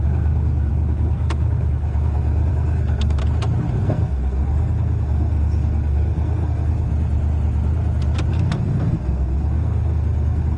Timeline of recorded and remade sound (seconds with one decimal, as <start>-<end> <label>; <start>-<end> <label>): 0.0-3.2 remade; 3.2-3.7 recorded; 3.7-6.9 remade; 6.9-8.3 recorded; 8.3-10.6 remade